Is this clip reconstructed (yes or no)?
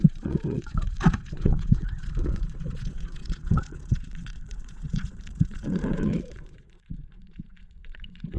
yes